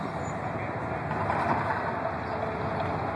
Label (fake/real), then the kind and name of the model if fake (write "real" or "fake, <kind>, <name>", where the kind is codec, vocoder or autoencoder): real